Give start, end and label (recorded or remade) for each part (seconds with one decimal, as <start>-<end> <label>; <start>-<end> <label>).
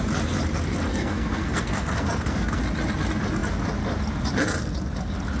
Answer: 0.0-0.9 recorded; 0.9-2.6 remade; 2.6-5.4 recorded